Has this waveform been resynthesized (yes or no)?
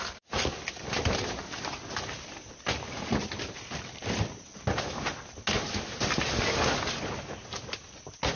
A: no